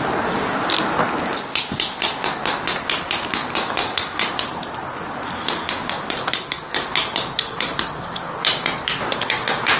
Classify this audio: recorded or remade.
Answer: recorded